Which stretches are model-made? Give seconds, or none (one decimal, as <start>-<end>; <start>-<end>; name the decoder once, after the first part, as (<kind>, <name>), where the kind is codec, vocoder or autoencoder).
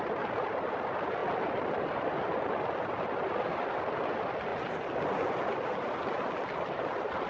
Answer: 0.0-4.5 (vocoder, BigVGAN v2); 5.3-7.3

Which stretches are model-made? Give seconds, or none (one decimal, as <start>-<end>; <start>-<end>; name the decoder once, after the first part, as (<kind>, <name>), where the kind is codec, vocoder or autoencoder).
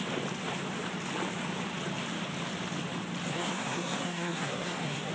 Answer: 3.3-5.1 (codec, SNAC)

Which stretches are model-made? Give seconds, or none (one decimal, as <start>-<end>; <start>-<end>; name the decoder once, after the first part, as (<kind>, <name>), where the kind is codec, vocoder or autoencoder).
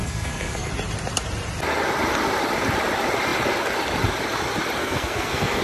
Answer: 0.0-0.7 (codec, SNAC); 4.8-5.6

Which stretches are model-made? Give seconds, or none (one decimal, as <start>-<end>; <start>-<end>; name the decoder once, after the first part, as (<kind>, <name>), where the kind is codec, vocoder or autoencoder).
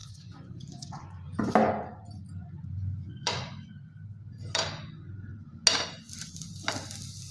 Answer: 0.0-1.5 (vocoder, Vocos); 2.4-3.5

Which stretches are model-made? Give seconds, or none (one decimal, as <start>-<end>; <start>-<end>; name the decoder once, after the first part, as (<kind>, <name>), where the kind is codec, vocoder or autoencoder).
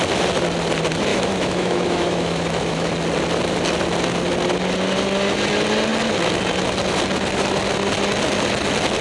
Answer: 1.1-2.9 (autoencoder, DAC-VAE)